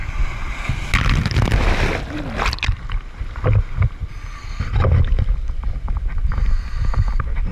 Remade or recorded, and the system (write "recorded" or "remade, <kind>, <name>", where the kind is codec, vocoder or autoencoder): recorded